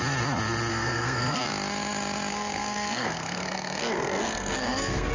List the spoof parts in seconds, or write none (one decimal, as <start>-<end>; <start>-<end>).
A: 0.7-1.4; 2.3-5.1